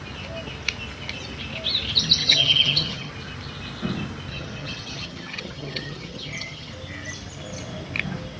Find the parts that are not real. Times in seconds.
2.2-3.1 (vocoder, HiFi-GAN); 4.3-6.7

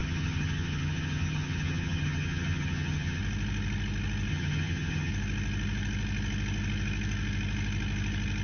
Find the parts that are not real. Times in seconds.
0.0-3.2 (vocoder, HiFi-GAN); 4.3-5.1